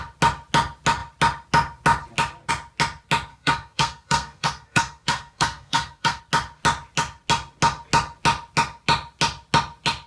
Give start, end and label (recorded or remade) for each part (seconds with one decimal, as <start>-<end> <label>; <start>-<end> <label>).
0.0-3.3 recorded; 3.3-6.2 remade; 6.2-10.1 recorded